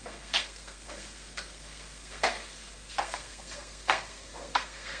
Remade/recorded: remade